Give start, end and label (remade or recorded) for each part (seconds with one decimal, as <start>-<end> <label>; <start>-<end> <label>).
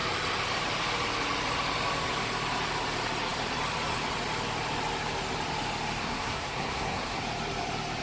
0.0-6.0 recorded; 6.0-7.2 remade; 7.2-8.0 recorded